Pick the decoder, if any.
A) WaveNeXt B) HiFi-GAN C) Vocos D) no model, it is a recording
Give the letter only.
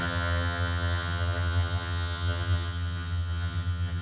B